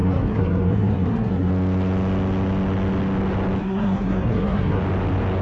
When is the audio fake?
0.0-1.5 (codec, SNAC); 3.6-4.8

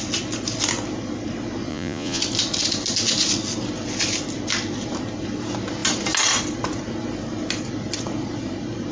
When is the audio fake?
1.7-2.2 (vocoder, Vocos)

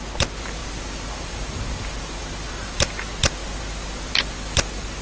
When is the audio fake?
none

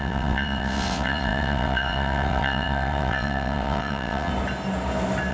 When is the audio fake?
0.0-4.3 (vocoder, WaveNeXt)

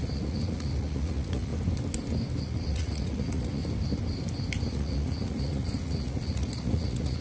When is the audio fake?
0.0-1.5 (vocoder, Vocos); 2.4-3.6; 4.7-7.2